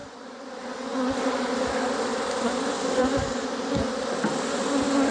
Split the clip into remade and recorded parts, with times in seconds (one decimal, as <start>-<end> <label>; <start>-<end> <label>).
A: 0.0-5.1 recorded